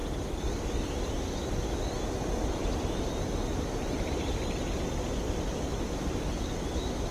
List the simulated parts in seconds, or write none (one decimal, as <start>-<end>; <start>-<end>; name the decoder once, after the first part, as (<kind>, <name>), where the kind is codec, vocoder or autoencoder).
none